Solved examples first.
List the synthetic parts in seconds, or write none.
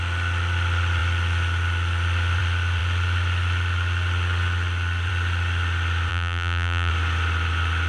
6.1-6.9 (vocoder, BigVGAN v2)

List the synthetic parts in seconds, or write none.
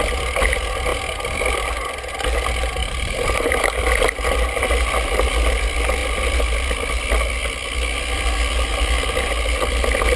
2.8-3.6 (vocoder, BigVGAN v2)